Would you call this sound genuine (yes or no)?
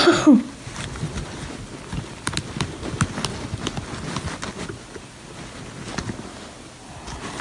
yes